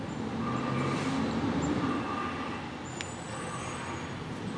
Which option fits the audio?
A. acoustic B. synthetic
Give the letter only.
A